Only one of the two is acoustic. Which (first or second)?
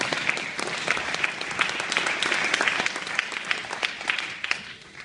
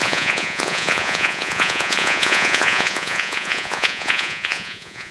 first